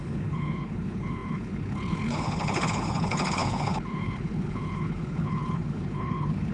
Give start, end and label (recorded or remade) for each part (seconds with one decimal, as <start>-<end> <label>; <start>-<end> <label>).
0.0-6.5 remade